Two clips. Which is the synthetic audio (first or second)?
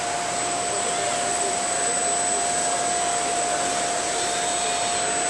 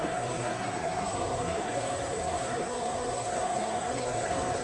second